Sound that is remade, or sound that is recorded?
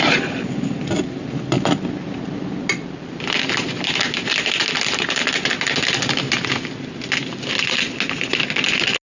recorded